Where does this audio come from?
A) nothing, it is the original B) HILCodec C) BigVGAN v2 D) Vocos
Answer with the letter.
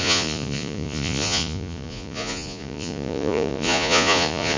D